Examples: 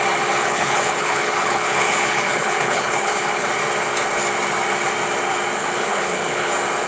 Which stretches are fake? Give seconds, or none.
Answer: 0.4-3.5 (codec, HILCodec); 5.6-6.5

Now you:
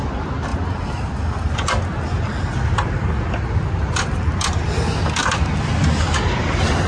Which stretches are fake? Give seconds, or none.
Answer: none

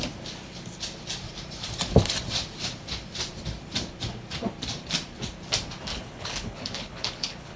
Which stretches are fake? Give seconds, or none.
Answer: 5.9-7.6 (codec, HILCodec)

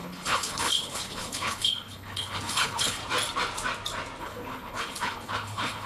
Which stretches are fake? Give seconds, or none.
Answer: 0.0-3.0 (codec, HILCodec); 4.2-5.9